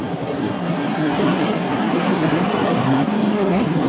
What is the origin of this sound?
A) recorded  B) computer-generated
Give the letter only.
B